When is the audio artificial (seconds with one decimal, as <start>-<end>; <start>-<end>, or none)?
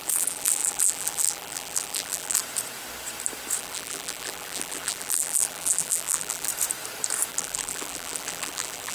0.0-2.4; 3.6-6.5; 7.3-8.9